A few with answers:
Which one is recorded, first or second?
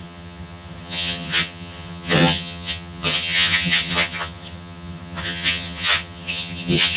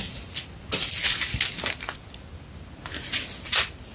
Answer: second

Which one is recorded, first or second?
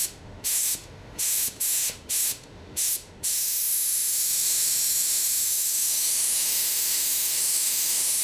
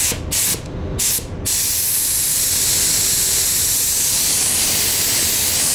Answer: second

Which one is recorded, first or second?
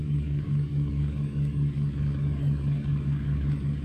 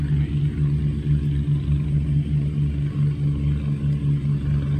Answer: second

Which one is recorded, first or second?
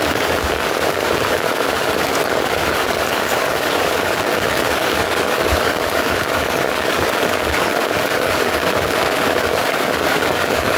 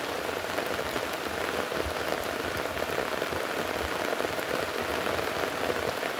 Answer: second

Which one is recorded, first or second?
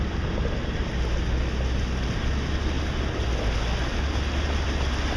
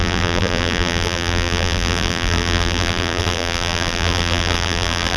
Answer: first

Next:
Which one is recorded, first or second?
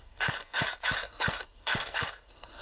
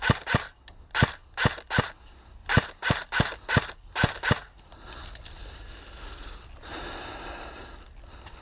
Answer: second